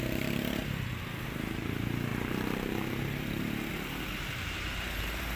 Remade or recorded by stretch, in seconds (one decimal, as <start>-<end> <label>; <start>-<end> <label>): 0.0-0.6 remade; 0.6-1.2 recorded; 1.2-5.4 remade